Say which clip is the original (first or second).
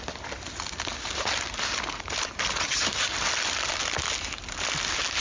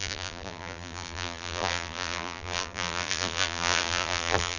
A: first